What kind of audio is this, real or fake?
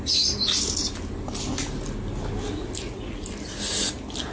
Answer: real